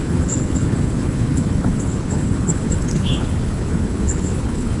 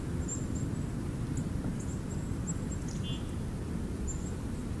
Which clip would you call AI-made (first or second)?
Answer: first